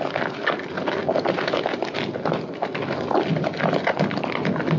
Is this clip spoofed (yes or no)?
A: no